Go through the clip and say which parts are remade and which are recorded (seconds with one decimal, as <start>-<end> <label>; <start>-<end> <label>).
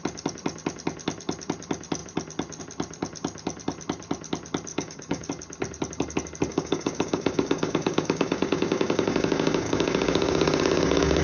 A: 0.0-4.7 recorded; 4.7-5.3 remade; 5.3-6.5 recorded; 6.5-11.2 remade